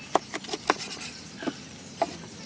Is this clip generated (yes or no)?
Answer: no